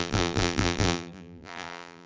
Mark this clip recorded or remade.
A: remade